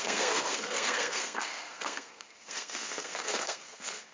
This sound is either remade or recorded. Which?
remade